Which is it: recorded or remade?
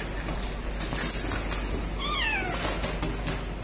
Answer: recorded